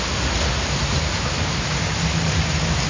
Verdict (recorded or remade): recorded